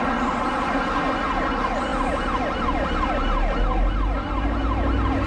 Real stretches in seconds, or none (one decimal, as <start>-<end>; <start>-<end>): 0.0-5.3